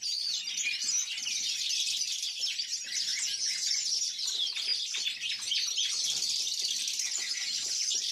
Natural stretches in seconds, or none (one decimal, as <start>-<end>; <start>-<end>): 0.0-3.1; 3.7-8.1